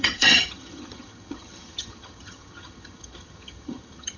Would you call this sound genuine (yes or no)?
no